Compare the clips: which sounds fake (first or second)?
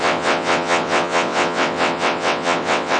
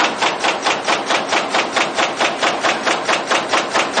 first